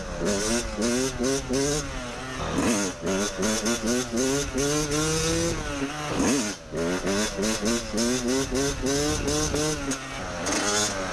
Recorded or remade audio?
recorded